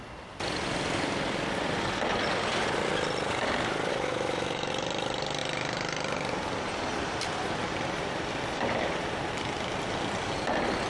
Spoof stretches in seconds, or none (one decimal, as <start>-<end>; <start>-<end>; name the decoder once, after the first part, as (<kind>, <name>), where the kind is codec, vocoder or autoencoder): 3.9-4.7 (autoencoder, DAC-VAE)